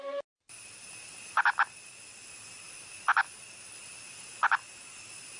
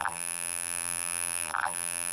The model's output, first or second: second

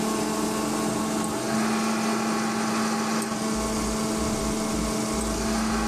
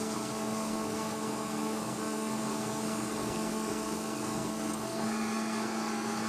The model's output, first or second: second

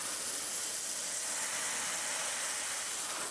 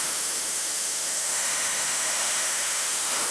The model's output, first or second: second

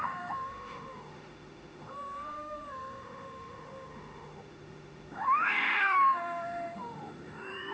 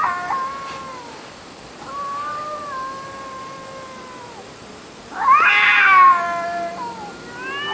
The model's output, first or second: first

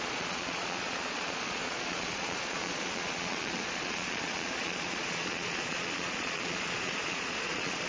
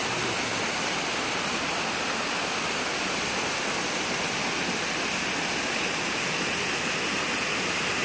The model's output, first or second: first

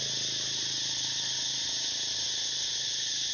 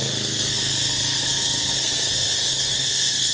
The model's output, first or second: second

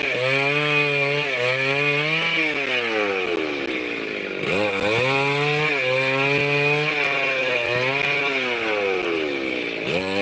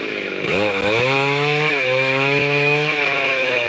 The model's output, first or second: second